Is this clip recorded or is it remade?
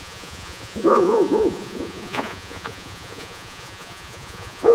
remade